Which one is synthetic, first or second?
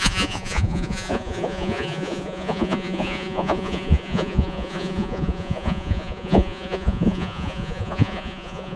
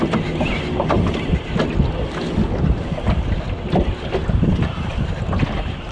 first